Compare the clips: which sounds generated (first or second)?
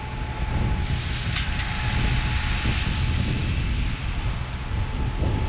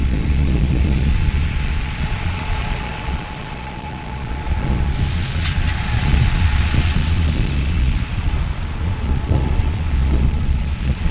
second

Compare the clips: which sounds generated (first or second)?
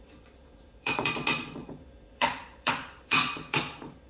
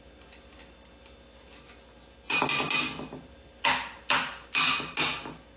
first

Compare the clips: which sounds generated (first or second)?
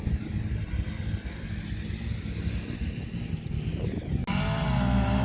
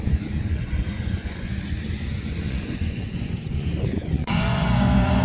second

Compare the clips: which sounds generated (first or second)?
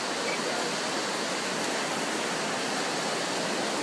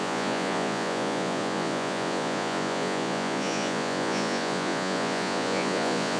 second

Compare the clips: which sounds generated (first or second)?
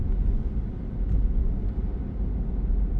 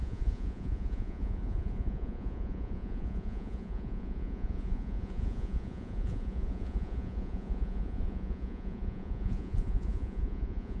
second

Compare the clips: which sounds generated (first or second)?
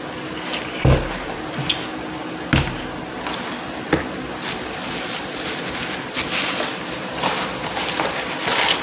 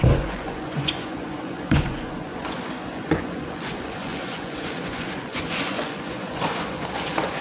second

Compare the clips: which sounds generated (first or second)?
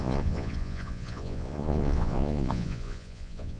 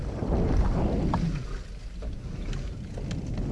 first